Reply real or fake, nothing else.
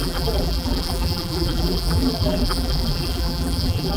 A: fake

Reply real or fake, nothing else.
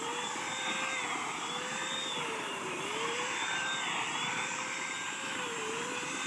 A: fake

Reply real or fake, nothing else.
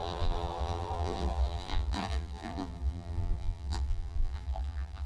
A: fake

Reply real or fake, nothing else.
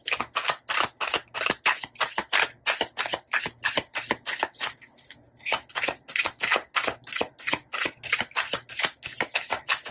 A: real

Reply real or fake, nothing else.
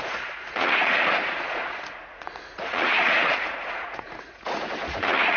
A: fake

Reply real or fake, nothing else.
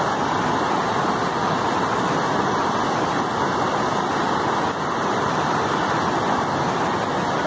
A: real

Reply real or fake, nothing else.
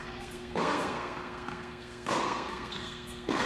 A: fake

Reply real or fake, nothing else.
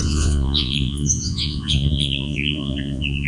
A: fake